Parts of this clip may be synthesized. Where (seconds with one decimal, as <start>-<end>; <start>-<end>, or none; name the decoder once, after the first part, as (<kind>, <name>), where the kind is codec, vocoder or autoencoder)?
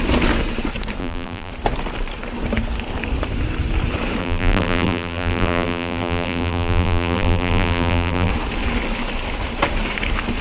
1.0-1.5 (vocoder, BigVGAN v2); 4.2-8.3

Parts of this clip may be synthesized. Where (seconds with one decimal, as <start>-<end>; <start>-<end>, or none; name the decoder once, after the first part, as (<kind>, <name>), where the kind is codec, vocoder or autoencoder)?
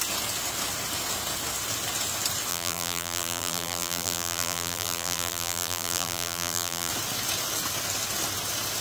2.5-6.9 (vocoder, BigVGAN v2)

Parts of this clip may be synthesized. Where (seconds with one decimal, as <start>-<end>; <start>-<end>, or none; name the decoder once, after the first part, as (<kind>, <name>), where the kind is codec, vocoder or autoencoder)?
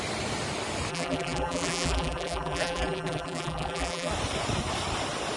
0.9-4.1 (vocoder, BigVGAN v2)